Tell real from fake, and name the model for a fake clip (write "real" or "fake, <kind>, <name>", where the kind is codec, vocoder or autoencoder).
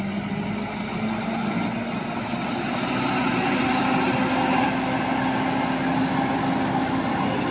real